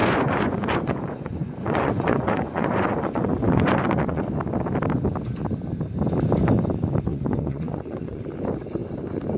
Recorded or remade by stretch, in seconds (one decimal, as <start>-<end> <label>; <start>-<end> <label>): 0.0-4.2 remade; 4.2-7.1 recorded; 7.1-8.2 remade; 8.2-9.4 recorded